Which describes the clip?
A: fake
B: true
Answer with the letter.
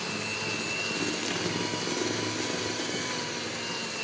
B